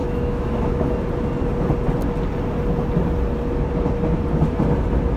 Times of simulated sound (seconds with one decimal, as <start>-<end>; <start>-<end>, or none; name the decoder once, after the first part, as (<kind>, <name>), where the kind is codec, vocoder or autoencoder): 0.0-0.9 (autoencoder, DAC-VAE)